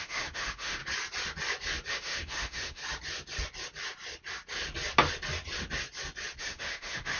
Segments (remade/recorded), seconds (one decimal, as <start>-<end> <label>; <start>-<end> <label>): 0.0-0.8 remade; 0.8-1.9 recorded; 1.9-2.8 remade; 2.8-6.4 recorded; 6.4-7.2 remade